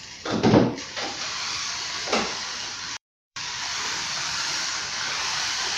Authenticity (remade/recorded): remade